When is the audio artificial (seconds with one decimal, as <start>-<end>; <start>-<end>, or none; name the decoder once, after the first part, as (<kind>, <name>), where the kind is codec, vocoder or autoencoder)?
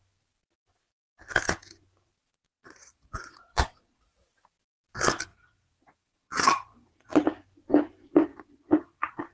2.2-4.2 (vocoder, Vocos); 5.3-7.2; 8.3-9.3